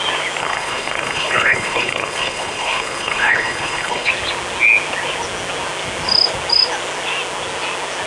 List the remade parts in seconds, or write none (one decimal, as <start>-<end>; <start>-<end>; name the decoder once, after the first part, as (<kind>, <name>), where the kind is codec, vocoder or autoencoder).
0.4-4.1 (codec, HILCodec)